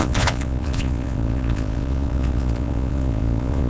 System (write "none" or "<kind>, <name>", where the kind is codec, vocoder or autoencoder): vocoder, Vocos